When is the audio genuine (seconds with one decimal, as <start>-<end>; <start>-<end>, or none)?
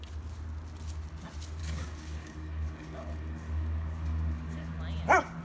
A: 0.0-1.6; 4.8-5.4